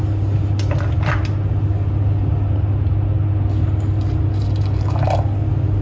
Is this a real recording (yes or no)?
yes